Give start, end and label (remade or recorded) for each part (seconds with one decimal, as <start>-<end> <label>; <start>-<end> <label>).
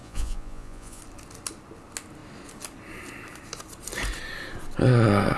0.0-1.0 remade; 1.0-5.4 recorded